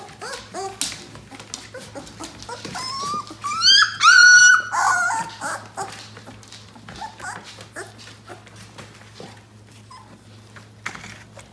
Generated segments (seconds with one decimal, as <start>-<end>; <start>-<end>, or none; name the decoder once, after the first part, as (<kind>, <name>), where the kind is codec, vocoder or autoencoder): none